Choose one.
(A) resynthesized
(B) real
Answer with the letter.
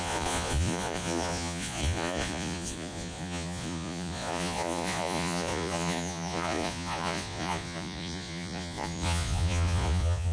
A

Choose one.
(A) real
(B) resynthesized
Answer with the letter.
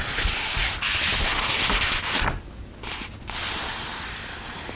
A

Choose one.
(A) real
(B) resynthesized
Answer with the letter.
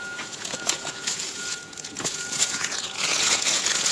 B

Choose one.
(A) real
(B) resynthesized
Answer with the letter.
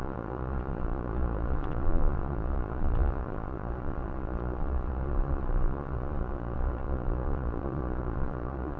B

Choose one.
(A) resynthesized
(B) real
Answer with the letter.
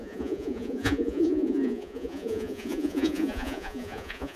A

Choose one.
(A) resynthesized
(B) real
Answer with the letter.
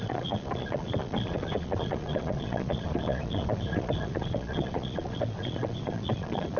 A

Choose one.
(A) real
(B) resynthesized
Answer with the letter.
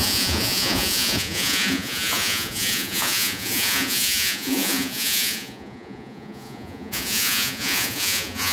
B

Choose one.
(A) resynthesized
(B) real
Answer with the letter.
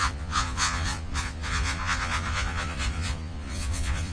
A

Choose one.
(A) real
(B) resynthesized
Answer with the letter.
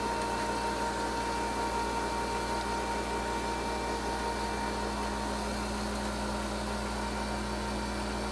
A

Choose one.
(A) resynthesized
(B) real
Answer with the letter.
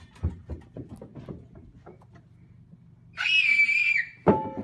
B